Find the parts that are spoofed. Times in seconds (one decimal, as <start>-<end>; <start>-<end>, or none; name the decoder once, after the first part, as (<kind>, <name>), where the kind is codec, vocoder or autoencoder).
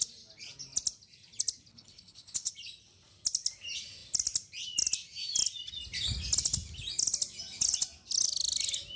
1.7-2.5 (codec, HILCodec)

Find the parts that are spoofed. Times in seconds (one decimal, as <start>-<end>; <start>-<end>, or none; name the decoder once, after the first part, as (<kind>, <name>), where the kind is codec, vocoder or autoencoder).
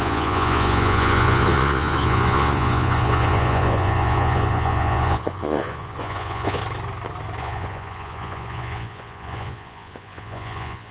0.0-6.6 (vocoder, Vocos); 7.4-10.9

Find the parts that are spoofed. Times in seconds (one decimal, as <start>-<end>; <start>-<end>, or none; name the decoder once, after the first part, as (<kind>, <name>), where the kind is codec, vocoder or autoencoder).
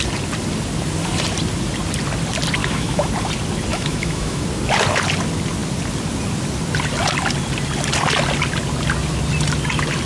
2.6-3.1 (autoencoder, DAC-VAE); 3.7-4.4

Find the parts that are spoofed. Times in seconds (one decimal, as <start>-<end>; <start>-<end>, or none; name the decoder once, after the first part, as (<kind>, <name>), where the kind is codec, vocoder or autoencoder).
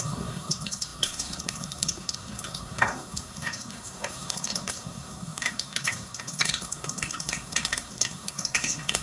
0.0-9.0 (codec, SNAC)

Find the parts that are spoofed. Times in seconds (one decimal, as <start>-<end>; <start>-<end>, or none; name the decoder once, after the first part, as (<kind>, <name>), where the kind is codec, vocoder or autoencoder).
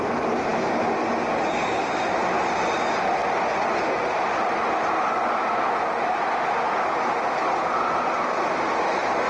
none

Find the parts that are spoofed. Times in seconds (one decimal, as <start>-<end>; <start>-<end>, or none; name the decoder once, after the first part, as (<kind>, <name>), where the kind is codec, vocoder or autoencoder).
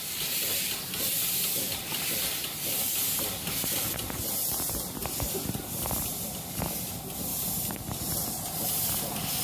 none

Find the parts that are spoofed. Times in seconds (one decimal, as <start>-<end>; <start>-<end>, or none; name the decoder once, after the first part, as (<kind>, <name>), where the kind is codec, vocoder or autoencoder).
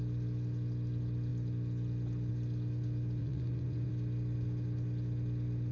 3.2-3.9 (vocoder, Vocos)